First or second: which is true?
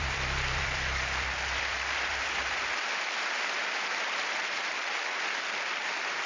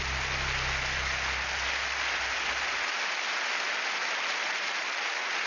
second